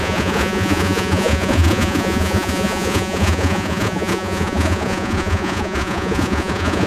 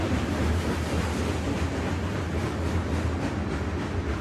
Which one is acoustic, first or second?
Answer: second